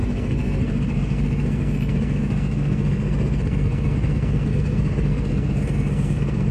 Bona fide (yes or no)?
no